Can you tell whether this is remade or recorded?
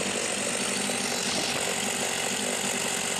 recorded